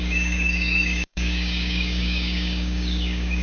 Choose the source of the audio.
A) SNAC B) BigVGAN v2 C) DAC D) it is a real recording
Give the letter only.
C